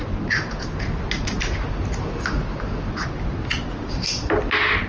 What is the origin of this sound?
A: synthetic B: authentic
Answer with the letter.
B